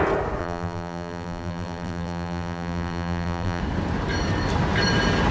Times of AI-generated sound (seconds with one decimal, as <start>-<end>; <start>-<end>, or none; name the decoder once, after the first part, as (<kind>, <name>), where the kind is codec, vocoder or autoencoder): 0.4-3.6 (vocoder, BigVGAN v2)